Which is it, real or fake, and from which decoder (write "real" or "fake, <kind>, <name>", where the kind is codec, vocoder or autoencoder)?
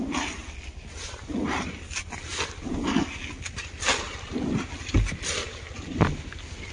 real